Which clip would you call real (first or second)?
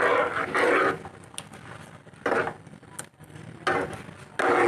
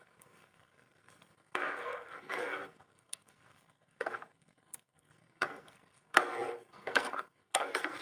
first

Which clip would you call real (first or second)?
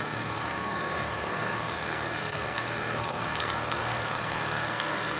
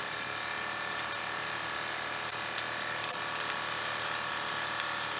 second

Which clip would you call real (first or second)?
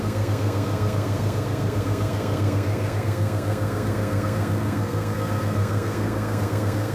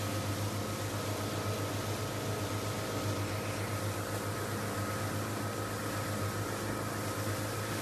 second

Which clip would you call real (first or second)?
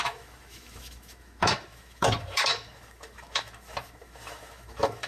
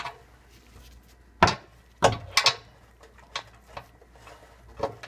second